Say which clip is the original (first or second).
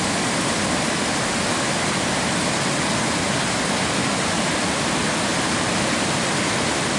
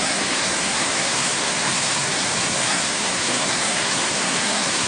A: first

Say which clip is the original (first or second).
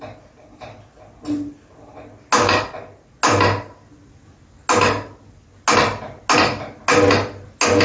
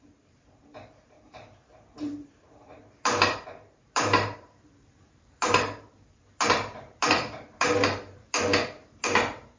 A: first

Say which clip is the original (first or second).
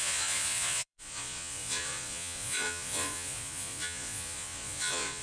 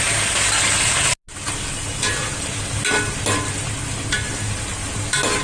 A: second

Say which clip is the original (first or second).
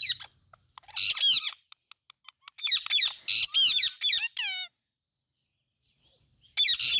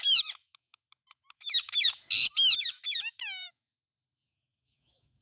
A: first